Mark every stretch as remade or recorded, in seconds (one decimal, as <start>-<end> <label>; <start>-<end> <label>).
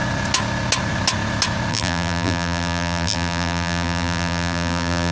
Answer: 0.0-1.7 recorded; 1.7-5.1 remade